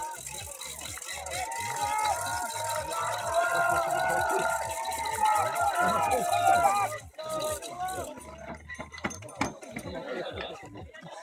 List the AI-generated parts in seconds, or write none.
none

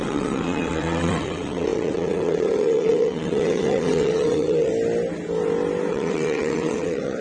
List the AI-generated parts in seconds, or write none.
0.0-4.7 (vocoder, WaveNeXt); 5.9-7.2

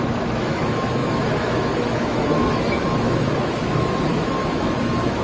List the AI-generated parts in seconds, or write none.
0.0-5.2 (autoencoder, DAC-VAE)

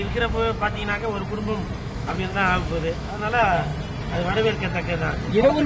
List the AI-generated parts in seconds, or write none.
0.0-0.8 (autoencoder, DAC-VAE); 1.8-3.7

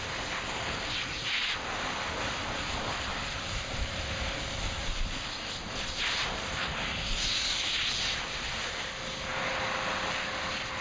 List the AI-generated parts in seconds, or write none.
none

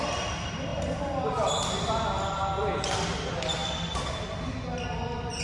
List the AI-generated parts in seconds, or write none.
none